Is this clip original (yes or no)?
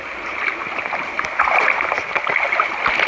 yes